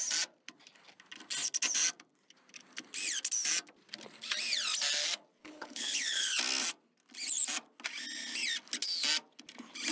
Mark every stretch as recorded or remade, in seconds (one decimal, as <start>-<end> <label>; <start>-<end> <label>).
0.0-5.4 recorded; 5.4-6.4 remade; 6.4-9.9 recorded